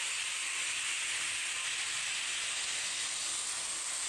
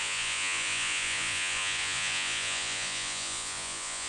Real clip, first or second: first